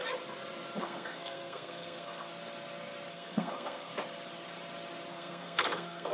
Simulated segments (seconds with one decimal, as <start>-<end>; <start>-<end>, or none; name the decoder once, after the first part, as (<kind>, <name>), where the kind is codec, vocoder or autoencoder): 0.8-2.3 (codec, SNAC); 3.1-3.9; 5.1-6.1